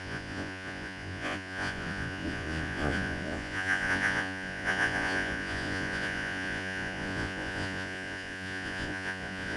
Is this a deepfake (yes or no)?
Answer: yes